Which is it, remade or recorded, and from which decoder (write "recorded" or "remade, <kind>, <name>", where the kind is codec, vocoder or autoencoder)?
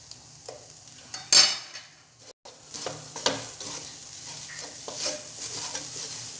recorded